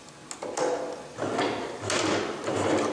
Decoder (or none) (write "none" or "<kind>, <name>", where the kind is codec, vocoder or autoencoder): none